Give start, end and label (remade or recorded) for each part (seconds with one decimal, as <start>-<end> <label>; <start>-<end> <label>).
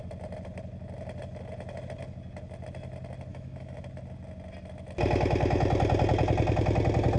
0.0-3.3 recorded; 3.3-3.8 remade; 3.8-7.2 recorded